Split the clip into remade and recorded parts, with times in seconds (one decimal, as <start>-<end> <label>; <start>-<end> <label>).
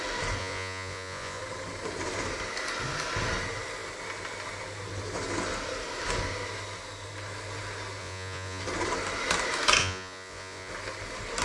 0.0-0.4 recorded; 0.4-1.4 remade; 1.4-8.0 recorded; 8.0-8.6 remade; 8.6-9.8 recorded; 9.8-10.7 remade; 10.7-11.4 recorded